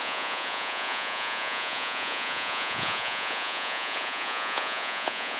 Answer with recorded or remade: remade